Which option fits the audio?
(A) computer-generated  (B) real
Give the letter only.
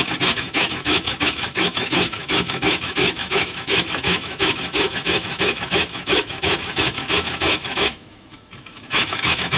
A